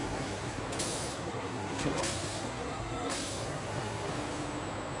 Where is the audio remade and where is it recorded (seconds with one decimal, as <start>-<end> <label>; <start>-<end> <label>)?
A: 0.0-0.6 remade; 0.6-1.1 recorded; 1.1-4.1 remade; 4.1-5.0 recorded